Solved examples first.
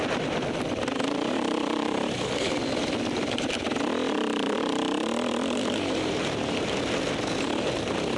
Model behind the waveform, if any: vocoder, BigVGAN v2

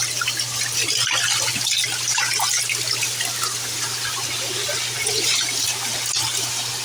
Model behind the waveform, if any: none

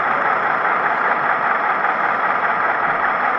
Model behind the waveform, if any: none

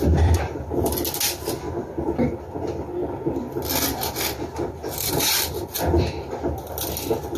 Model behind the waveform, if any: none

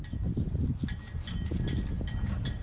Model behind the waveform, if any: none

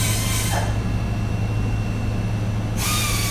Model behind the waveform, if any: none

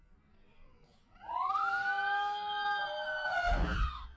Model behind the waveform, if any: none